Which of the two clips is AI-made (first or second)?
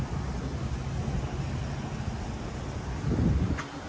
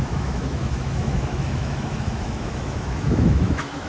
second